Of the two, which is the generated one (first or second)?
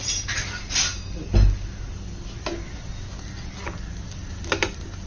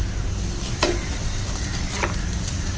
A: second